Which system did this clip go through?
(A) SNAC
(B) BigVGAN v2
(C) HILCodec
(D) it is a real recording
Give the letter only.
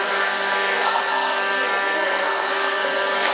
A